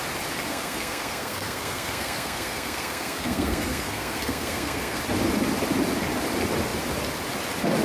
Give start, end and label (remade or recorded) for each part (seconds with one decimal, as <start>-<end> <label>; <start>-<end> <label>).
0.0-0.5 recorded; 0.5-5.0 remade; 5.0-7.8 recorded